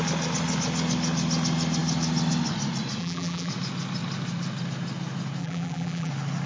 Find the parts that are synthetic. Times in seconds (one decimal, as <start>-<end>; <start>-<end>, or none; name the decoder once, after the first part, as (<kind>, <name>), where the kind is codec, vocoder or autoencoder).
3.0-3.5 (vocoder, BigVGAN v2); 5.4-6.1

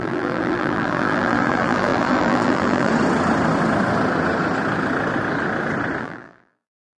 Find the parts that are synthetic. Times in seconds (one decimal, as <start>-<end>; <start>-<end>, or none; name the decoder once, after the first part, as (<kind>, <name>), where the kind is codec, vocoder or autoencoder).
0.0-2.9 (vocoder, BigVGAN v2); 6.0-7.0

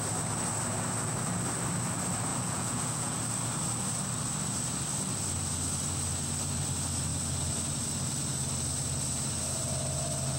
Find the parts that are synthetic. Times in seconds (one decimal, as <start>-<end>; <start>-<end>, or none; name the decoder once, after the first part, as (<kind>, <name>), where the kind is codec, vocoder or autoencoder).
2.3-3.2 (vocoder, Vocos)